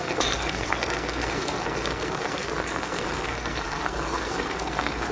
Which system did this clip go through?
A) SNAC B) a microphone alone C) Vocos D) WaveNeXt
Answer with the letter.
A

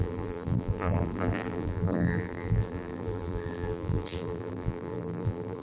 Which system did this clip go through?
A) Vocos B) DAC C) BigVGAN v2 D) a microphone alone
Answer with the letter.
C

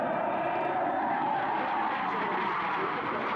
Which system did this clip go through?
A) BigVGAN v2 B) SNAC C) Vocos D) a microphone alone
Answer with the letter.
D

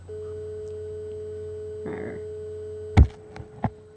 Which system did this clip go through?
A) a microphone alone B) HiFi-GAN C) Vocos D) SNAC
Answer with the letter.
A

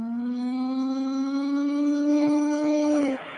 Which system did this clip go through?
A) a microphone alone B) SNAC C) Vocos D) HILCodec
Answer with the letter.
D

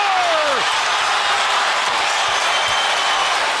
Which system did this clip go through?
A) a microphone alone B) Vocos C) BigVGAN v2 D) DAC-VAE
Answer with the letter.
A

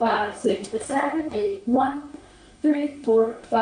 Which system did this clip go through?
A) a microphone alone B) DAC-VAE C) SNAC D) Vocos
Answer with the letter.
C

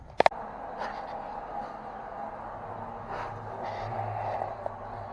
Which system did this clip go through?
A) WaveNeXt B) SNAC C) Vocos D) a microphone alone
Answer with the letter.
D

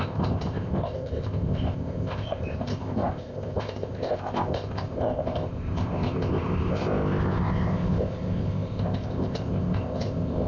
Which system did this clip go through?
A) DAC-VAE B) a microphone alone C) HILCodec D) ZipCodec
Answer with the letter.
D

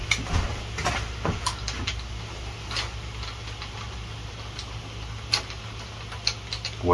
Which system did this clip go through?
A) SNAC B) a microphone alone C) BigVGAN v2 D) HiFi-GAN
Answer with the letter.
B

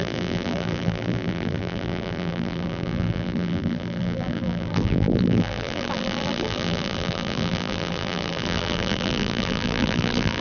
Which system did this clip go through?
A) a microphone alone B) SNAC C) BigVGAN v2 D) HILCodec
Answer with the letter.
C